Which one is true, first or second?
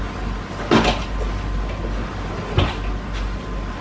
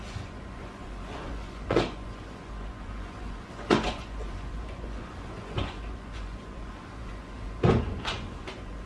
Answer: first